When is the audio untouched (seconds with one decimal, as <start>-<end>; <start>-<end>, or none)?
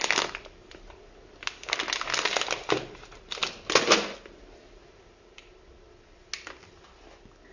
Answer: 0.0-7.5